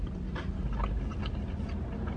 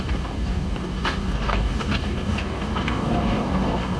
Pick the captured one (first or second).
first